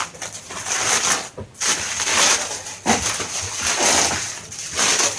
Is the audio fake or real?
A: real